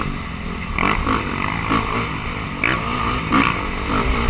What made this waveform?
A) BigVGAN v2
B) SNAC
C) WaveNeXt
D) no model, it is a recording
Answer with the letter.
D